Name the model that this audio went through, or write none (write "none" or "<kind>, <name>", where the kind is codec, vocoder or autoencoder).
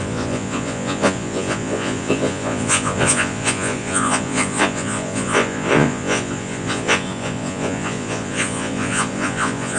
vocoder, Vocos